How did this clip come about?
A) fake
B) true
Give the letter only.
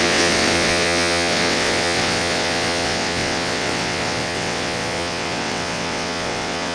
A